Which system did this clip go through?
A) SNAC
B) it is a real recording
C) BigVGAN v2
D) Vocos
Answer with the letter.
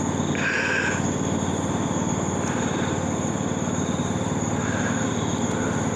B